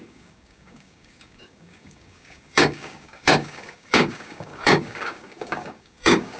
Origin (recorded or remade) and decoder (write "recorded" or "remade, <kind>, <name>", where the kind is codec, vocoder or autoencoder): remade, codec, DAC